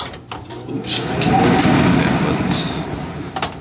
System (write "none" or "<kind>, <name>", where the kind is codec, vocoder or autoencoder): none